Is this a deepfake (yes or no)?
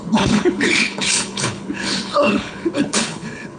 yes